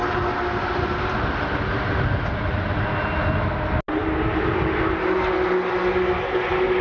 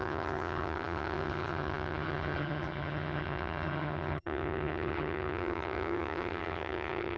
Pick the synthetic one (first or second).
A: second